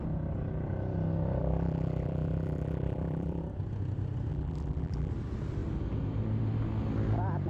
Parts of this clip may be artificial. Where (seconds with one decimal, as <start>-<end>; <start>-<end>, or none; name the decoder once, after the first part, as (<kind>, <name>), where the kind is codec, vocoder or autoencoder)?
1.4-3.4 (vocoder, BigVGAN v2); 4.3-5.1